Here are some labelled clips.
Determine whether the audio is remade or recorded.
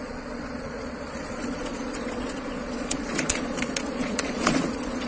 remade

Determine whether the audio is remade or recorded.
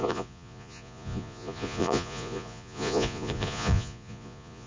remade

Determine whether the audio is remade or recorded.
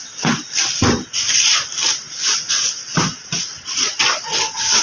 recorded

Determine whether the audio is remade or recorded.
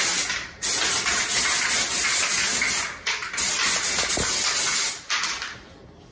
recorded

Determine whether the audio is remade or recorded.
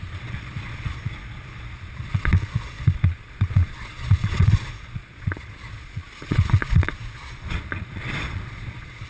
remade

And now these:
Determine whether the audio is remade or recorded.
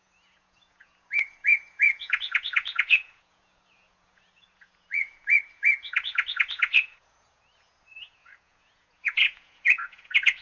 remade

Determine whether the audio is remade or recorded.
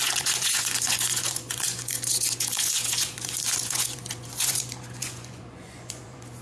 remade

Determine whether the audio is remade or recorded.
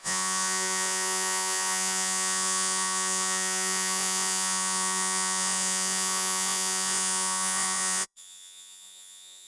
remade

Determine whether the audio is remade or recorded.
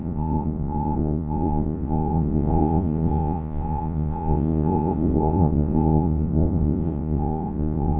remade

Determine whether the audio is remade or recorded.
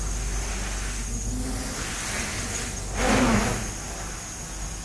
recorded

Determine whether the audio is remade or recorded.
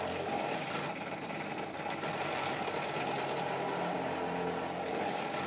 recorded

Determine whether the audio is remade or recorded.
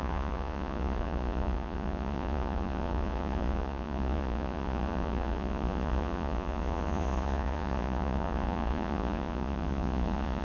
remade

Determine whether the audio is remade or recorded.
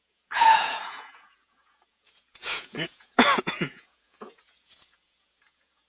remade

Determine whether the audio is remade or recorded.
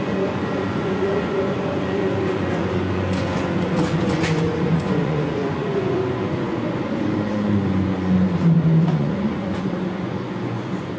remade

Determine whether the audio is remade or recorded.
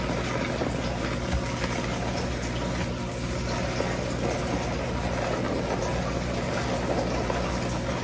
recorded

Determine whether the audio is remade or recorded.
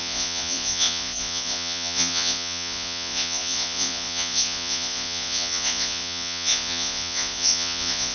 remade